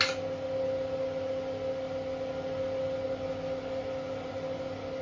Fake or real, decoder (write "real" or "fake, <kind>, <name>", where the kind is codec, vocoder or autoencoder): real